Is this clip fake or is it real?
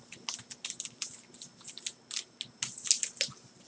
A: real